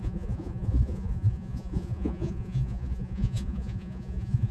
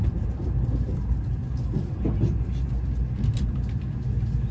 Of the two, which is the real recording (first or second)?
second